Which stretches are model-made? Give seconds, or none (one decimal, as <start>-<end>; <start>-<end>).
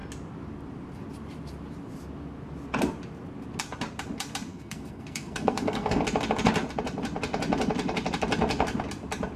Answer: 4.5-6.0